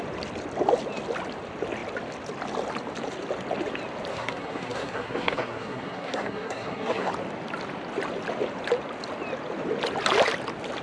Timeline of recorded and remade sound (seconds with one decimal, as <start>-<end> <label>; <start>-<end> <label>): 0.0-4.1 recorded; 4.1-7.1 remade; 7.1-10.8 recorded

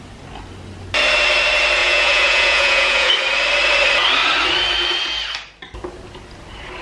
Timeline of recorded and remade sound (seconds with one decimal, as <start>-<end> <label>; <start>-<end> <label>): 0.0-1.8 recorded; 1.8-3.1 remade; 3.1-6.8 recorded